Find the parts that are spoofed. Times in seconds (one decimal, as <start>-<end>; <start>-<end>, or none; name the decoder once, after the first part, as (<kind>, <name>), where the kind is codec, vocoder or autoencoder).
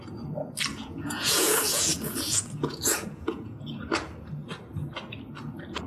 0.7-3.8 (vocoder, Vocos)